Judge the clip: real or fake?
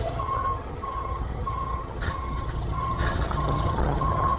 fake